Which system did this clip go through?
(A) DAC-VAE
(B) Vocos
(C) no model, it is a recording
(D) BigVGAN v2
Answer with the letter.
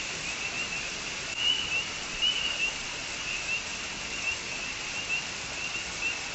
C